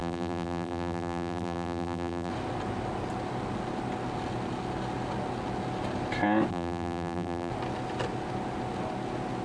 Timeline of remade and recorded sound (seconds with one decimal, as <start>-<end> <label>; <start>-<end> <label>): 0.0-2.3 remade; 2.3-6.5 recorded; 6.5-7.5 remade; 7.5-9.4 recorded